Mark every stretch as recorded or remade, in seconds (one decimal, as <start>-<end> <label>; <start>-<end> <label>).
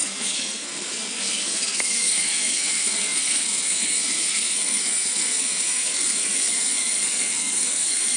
0.0-8.2 remade